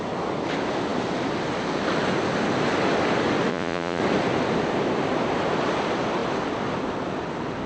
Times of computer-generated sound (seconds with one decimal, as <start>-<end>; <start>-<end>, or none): 3.5-4.0